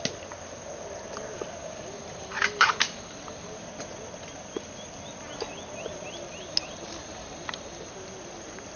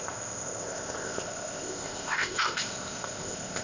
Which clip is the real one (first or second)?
first